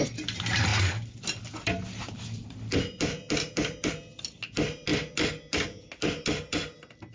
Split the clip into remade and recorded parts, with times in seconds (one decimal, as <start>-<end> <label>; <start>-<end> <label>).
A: 0.0-7.1 recorded